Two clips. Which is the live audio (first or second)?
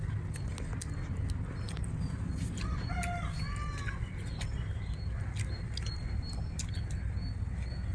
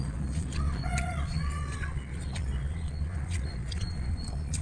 first